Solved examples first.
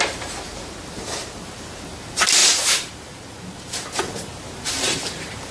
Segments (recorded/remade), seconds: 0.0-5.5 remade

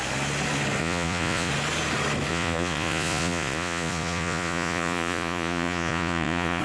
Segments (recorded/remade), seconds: 0.0-0.8 recorded; 0.8-1.5 remade; 1.5-2.3 recorded; 2.3-6.6 remade

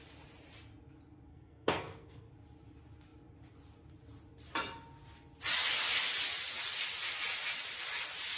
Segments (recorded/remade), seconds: 0.0-1.3 recorded; 1.3-2.3 remade; 2.3-8.4 recorded

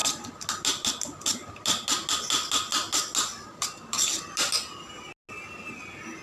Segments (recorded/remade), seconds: 0.0-6.2 recorded

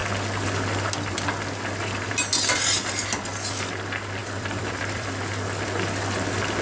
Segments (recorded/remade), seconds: 0.0-4.2 recorded; 4.2-5.1 remade; 5.1-6.6 recorded

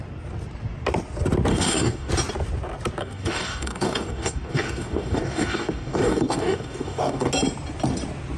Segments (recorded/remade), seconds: 0.0-1.5 recorded; 1.5-2.1 remade; 2.1-3.0 recorded; 3.0-7.3 remade; 7.3-8.4 recorded